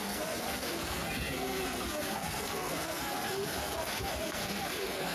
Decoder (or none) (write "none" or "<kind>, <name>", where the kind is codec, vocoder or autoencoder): codec, SNAC